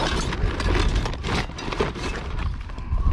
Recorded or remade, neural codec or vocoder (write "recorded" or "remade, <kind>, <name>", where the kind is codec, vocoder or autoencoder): recorded